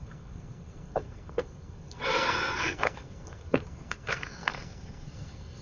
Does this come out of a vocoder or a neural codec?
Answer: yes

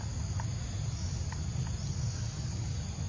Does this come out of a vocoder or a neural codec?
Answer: no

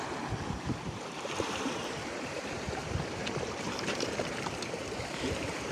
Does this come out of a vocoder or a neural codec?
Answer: yes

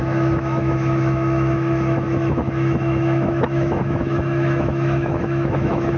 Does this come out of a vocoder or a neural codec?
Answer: yes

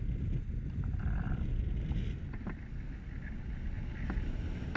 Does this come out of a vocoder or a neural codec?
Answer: no